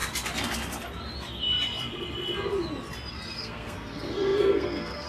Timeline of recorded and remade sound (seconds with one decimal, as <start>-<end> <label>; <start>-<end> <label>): 0.0-3.1 recorded; 3.1-5.1 remade